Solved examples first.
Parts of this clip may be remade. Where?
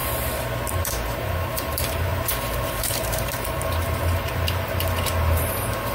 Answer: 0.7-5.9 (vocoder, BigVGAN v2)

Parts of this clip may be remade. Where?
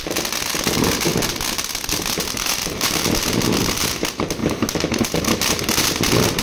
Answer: none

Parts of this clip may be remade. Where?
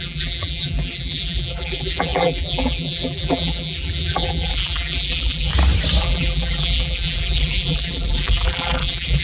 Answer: 0.0-5.5 (vocoder, BigVGAN v2); 6.0-9.2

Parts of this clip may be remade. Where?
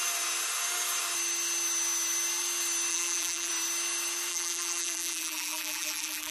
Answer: 2.9-3.5 (vocoder, BigVGAN v2); 4.3-6.3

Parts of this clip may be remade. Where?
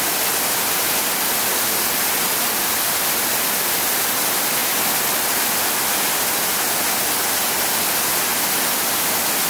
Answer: none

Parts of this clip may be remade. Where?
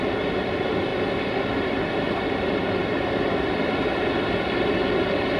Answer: none